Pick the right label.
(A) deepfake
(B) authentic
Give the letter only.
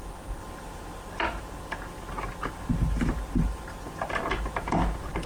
B